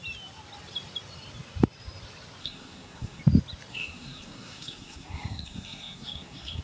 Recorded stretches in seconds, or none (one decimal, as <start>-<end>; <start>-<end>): 0.0-2.4; 3.2-3.7